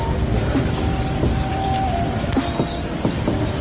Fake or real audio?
fake